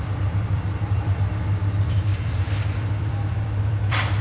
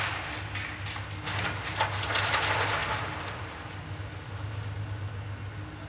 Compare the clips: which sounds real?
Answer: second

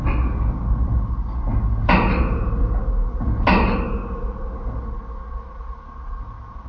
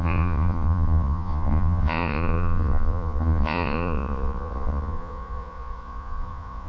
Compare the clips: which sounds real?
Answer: first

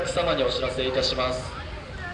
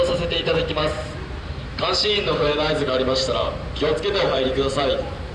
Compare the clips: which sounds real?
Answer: first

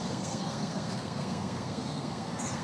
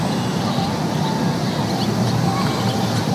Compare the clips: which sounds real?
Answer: second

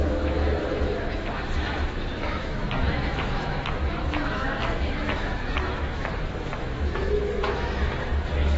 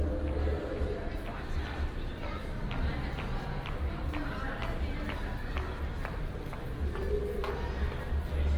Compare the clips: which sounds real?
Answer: second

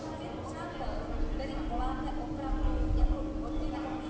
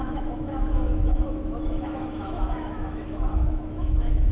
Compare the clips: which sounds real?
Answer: first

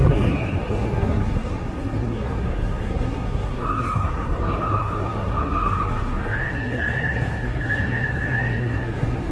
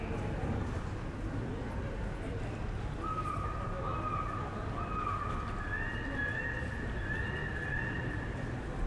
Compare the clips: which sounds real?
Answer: second